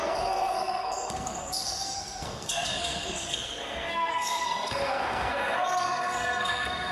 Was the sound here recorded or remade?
remade